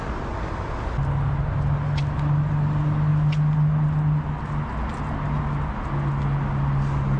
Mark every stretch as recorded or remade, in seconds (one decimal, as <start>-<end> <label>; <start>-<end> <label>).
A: 0.0-7.2 recorded